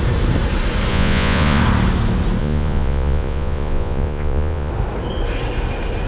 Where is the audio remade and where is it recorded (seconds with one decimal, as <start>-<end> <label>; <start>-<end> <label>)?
0.0-0.9 recorded; 0.9-1.6 remade; 1.6-2.4 recorded; 2.4-4.7 remade; 4.7-6.1 recorded